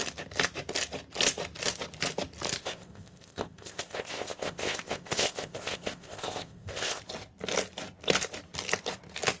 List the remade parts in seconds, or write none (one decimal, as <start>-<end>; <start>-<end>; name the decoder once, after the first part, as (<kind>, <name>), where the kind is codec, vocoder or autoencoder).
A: 2.6-7.0 (codec, ZipCodec)